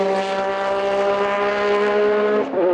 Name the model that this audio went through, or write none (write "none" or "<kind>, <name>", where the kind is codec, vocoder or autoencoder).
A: none